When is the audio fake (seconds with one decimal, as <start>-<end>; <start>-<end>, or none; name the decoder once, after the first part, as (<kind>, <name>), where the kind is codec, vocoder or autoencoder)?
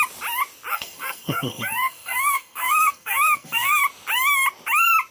0.7-3.8 (codec, SNAC)